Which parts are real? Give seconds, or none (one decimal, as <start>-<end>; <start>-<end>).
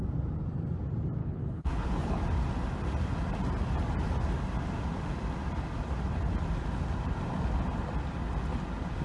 0.0-1.2; 2.2-9.0